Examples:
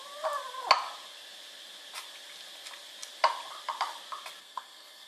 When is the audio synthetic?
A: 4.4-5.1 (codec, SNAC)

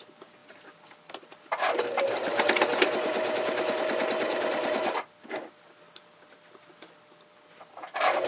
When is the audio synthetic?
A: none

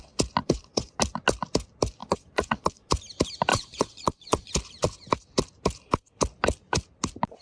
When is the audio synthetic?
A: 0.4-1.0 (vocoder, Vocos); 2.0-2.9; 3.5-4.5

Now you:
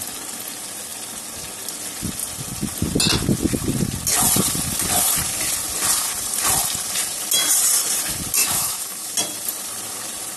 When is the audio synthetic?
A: 8.4-9.1 (autoencoder, DAC-VAE)